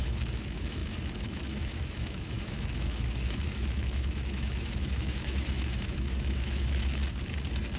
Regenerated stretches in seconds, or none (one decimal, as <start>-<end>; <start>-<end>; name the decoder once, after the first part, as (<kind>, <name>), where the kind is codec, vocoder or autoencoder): 0.0-7.0 (autoencoder, DAC-VAE)